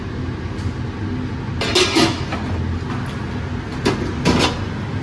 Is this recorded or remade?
recorded